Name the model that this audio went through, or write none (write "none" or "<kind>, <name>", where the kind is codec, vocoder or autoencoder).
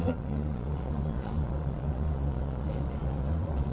vocoder, Vocos